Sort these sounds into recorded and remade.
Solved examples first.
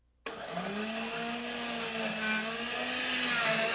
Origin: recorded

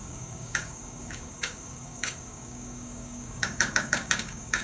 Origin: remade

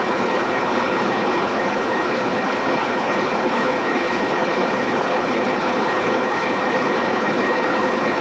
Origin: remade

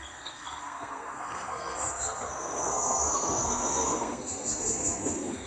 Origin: remade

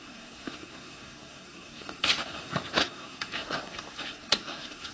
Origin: remade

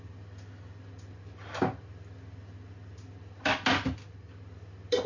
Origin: recorded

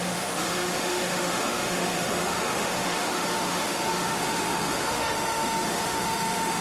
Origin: remade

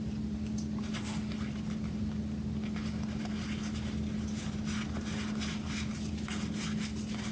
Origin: recorded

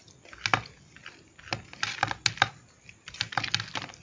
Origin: recorded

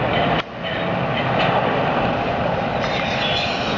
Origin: recorded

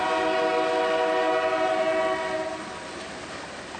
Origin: recorded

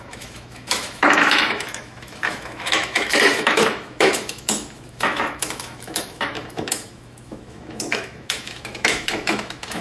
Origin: remade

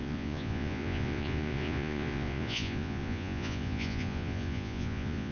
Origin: remade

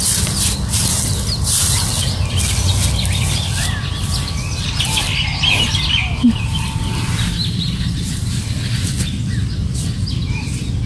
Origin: recorded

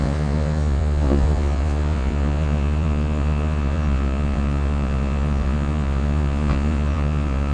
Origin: remade